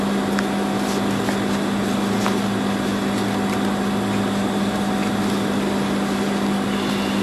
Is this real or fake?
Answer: real